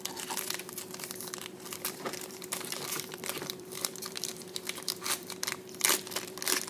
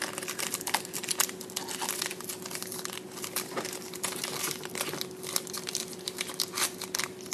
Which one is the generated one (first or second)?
first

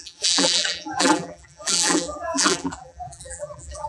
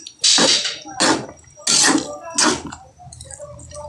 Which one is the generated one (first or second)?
first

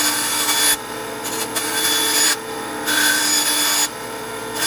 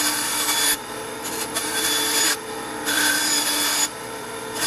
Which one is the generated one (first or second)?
second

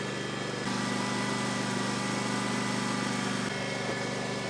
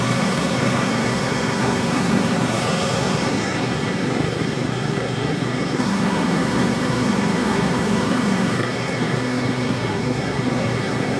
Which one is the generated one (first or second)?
second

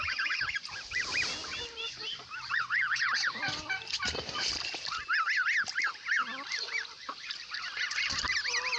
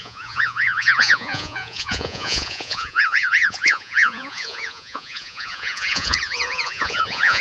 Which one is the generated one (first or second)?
second